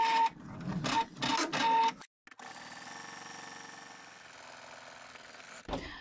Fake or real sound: real